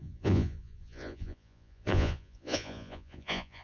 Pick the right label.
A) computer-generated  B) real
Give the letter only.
A